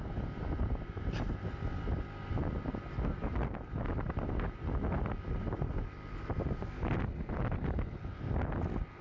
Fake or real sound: real